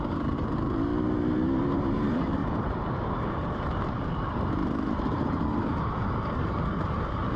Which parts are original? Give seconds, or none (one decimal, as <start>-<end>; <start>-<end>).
0.9-1.7